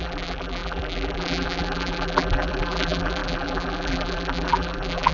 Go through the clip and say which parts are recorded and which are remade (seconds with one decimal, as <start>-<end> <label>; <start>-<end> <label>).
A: 0.0-5.1 remade